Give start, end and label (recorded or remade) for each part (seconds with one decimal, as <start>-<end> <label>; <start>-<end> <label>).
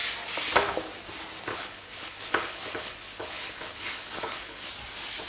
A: 0.0-1.5 recorded; 1.5-4.7 remade; 4.7-5.3 recorded